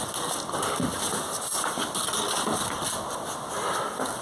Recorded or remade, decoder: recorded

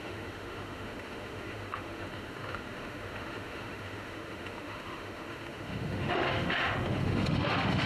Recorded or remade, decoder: remade, autoencoder, DAC-VAE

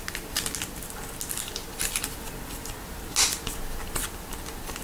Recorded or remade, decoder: recorded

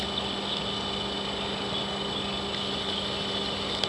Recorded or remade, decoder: recorded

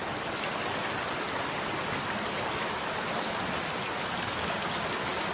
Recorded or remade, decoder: recorded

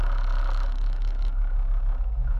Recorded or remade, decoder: remade, autoencoder, DAC-VAE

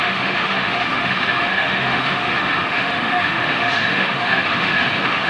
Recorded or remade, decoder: remade, autoencoder, DAC-VAE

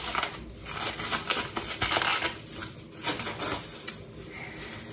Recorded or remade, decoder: recorded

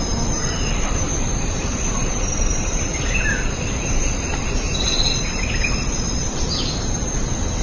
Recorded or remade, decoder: recorded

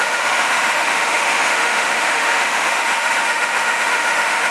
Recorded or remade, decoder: remade, autoencoder, DAC-VAE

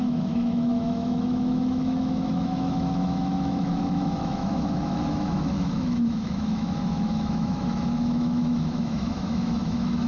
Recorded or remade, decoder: remade, autoencoder, DAC-VAE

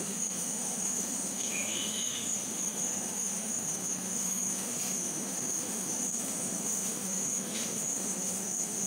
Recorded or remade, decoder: remade, autoencoder, DAC-VAE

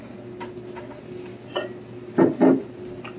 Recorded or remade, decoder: recorded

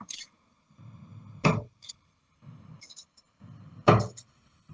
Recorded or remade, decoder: recorded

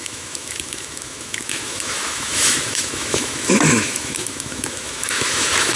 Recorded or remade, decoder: remade, autoencoder, DAC-VAE